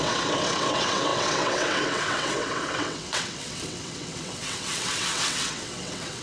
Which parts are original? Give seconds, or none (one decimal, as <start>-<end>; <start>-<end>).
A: none

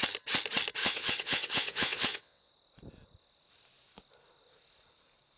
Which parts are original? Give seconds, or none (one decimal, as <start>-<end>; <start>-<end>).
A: 0.0-0.8; 2.5-5.4

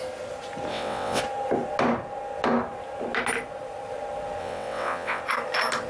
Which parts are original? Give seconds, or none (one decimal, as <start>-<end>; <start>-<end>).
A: 0.0-0.7; 1.2-4.4; 5.2-5.9

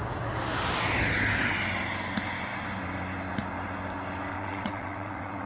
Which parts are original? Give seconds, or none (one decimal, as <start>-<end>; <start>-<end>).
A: 0.0-4.3

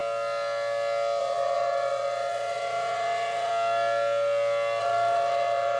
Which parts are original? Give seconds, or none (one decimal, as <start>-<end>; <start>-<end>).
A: 0.0-1.2; 3.5-4.8

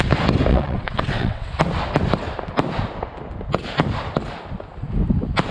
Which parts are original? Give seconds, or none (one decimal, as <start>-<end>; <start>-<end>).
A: 0.0-0.5; 1.6-5.5

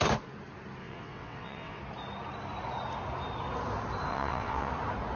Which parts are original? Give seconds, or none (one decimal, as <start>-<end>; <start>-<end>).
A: 0.0-0.8; 1.8-4.1; 4.7-5.2